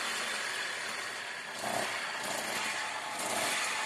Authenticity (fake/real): real